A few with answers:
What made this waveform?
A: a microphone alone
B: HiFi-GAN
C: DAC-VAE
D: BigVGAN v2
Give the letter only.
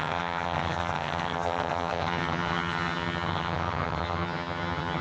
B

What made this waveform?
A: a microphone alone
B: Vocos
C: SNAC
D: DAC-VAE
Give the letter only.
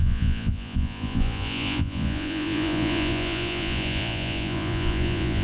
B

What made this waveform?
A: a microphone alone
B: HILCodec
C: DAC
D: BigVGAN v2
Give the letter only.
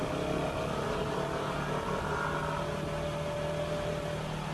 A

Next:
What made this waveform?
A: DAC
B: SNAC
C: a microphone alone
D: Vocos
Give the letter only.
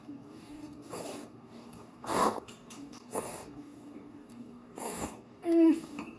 A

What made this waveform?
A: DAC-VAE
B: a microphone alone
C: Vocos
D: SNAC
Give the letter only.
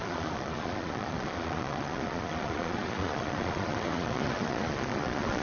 C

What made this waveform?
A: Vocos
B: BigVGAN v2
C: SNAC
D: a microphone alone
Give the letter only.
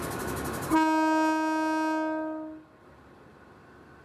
D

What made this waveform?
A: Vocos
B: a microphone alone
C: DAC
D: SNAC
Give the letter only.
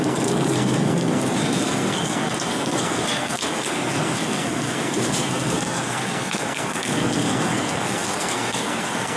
D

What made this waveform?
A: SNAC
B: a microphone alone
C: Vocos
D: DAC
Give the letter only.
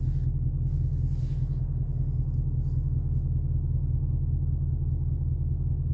B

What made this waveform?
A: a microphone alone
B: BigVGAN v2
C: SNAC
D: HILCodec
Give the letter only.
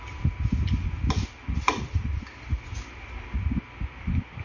A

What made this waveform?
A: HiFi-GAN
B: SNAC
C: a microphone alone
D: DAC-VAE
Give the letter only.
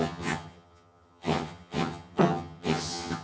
A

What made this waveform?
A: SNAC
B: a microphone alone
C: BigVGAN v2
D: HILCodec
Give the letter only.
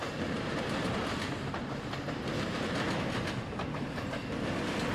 B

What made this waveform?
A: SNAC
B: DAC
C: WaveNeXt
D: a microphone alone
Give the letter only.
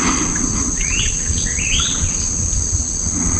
C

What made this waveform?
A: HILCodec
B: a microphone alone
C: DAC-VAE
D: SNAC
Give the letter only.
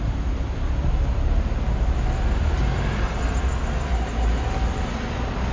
B